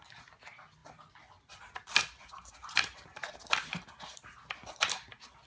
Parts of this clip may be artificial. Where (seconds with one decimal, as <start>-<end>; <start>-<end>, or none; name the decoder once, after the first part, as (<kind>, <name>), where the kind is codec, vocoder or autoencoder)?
none